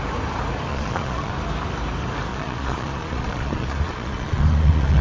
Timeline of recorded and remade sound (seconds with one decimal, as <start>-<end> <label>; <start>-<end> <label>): 0.0-0.7 recorded; 0.7-1.3 remade; 1.3-2.3 recorded; 2.3-5.0 remade